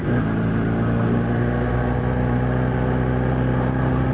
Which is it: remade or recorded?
recorded